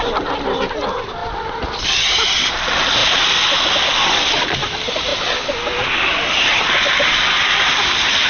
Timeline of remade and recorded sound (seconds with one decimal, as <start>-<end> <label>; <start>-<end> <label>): 0.0-5.1 remade; 5.1-6.7 recorded; 6.7-8.3 remade